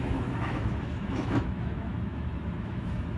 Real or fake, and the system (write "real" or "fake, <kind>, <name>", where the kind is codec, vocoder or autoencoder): fake, autoencoder, DAC-VAE